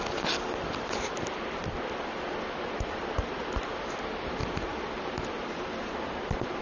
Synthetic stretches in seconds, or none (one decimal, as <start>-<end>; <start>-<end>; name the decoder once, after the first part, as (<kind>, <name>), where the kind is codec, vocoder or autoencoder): none